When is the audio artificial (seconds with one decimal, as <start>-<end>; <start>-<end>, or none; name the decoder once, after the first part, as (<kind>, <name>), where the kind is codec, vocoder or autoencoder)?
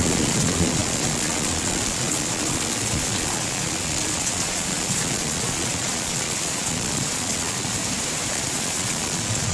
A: 0.0-7.8 (vocoder, Vocos); 8.3-9.5